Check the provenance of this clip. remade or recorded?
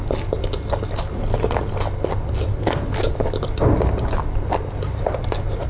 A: recorded